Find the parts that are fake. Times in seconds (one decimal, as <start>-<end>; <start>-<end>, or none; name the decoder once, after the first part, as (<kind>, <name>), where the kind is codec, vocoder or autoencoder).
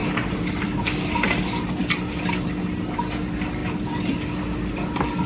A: none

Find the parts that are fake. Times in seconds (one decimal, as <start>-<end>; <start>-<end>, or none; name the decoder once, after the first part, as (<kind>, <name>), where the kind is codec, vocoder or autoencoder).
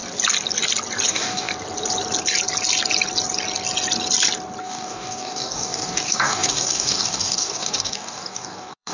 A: 1.1-1.5 (codec, DAC); 4.6-8.9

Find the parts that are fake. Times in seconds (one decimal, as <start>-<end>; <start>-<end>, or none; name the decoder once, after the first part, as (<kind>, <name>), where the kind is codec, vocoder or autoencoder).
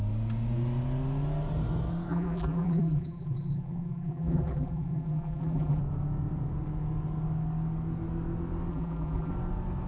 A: 2.1-5.8 (vocoder, BigVGAN v2); 8.7-9.3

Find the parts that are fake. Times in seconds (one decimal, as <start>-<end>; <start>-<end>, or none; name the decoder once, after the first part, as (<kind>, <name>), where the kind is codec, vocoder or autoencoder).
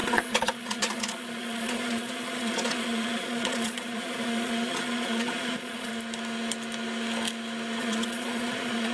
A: 0.0-5.9 (vocoder, Vocos); 7.8-8.9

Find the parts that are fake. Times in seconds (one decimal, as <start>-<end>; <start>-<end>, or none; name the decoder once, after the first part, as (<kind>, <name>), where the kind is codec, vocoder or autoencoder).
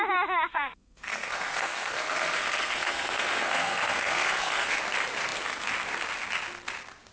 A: 0.5-4.8 (codec, SNAC)